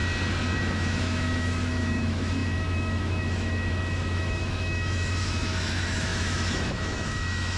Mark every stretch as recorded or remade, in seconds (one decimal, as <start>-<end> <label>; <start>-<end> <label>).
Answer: 0.0-0.6 recorded; 0.6-7.6 remade